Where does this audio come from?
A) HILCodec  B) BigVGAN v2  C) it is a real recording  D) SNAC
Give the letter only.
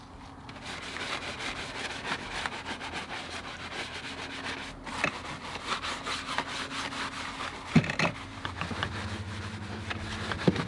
C